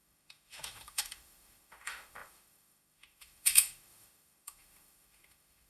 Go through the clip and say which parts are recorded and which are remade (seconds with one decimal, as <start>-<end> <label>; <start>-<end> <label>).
0.0-5.7 remade